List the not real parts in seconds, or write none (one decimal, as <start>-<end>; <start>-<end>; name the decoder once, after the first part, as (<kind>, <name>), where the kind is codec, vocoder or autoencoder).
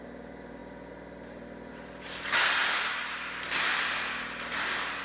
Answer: none